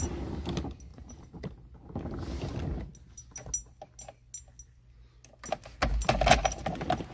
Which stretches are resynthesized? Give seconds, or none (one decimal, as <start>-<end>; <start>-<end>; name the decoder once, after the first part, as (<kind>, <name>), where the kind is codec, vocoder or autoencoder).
0.9-1.5 (vocoder, BigVGAN v2)